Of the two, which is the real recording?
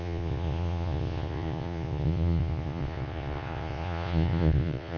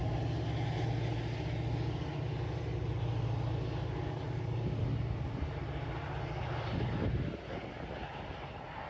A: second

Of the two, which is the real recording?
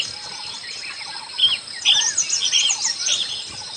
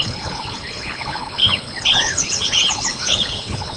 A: first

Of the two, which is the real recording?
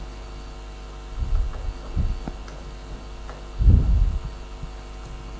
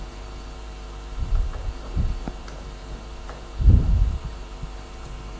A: first